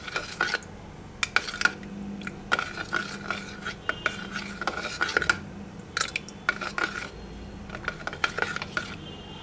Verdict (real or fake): real